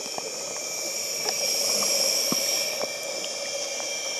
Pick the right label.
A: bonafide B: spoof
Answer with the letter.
A